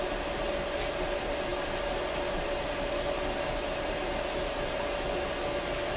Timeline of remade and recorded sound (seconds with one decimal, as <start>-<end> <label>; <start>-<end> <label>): 0.0-6.0 recorded